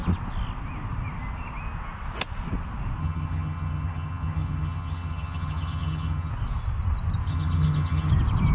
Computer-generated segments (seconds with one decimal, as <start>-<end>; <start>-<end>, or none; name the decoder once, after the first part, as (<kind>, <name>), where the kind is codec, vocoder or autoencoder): 3.0-6.3 (vocoder, HiFi-GAN); 7.3-8.1